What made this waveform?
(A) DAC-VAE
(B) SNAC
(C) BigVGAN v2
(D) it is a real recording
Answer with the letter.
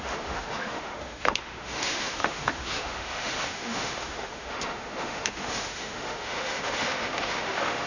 A